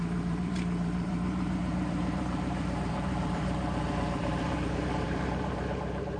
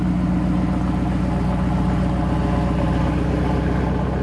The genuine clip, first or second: second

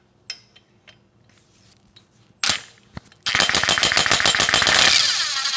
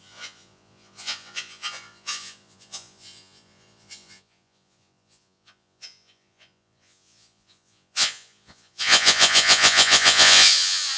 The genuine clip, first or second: first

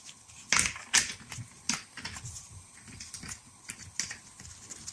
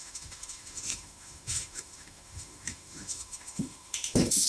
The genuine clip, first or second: first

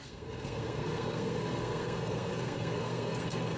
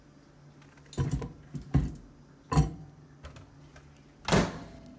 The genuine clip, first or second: second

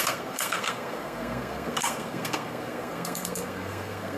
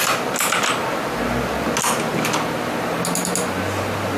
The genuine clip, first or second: second